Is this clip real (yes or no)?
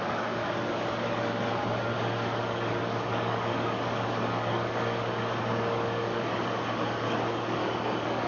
no